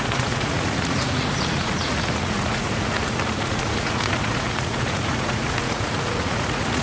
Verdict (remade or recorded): remade